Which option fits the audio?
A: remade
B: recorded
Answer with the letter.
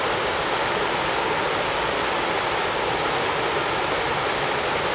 B